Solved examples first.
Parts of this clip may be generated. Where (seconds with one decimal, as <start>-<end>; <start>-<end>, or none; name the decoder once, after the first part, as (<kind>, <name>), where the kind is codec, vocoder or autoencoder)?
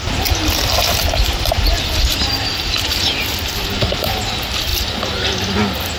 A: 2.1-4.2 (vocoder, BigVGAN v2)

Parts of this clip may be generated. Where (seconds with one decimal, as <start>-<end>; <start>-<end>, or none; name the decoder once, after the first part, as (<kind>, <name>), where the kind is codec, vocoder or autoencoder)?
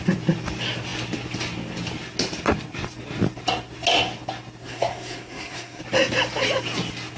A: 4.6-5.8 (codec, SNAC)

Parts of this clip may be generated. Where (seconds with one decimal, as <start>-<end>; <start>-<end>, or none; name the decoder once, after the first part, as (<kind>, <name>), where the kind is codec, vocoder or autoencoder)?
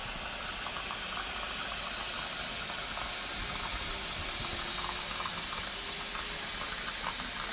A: none